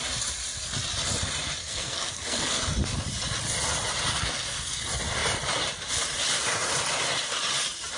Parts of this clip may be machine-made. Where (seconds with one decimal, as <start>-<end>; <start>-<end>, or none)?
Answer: 1.6-2.6; 4.1-4.8